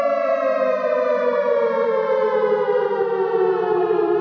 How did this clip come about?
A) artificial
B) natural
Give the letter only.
A